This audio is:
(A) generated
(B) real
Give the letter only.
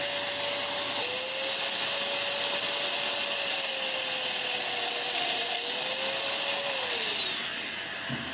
B